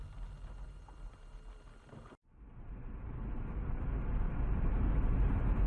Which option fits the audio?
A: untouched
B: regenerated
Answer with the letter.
A